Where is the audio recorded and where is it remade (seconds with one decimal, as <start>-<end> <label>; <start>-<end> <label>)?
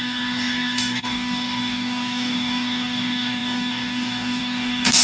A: 0.0-5.0 remade